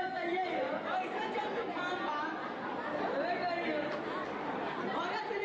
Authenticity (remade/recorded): recorded